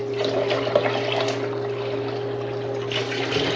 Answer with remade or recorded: recorded